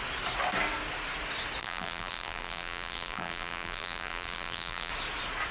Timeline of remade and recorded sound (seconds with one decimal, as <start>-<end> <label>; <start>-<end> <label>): 0.0-1.6 recorded; 1.6-4.9 remade; 4.9-5.5 recorded